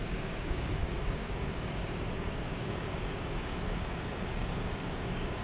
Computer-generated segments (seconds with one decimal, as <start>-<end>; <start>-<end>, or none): 0.0-5.4